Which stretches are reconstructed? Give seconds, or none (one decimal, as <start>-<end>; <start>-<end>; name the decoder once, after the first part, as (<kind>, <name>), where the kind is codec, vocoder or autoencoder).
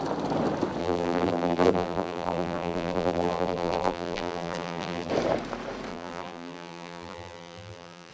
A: 0.8-5.1 (vocoder, BigVGAN v2); 5.9-8.1